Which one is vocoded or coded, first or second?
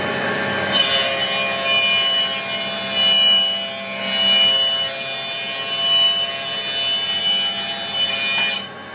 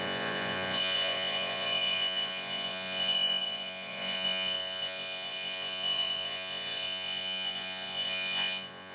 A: second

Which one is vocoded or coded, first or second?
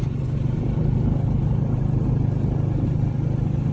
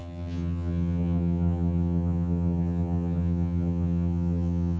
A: second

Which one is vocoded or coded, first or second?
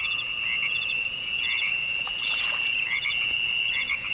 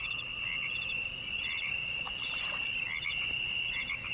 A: first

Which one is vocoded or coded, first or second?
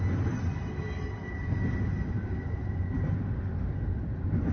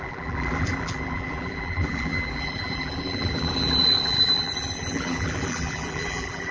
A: second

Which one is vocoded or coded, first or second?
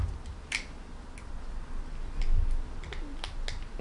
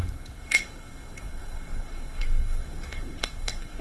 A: second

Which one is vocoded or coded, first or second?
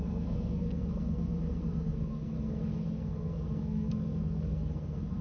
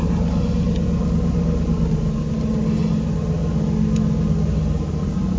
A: first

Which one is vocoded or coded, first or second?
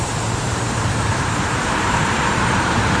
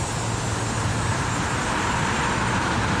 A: first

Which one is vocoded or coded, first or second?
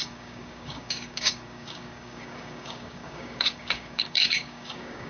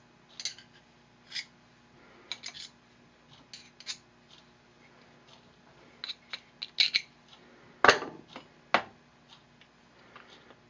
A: first